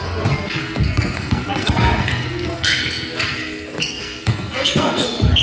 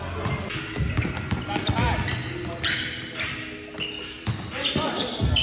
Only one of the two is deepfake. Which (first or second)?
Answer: first